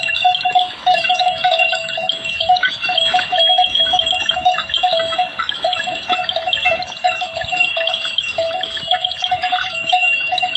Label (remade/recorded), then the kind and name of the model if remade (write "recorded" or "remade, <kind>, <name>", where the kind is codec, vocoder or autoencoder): remade, codec, DAC